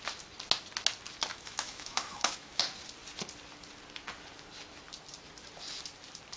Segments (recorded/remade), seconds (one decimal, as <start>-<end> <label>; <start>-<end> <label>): 0.0-1.3 recorded; 1.3-2.6 remade; 2.6-6.4 recorded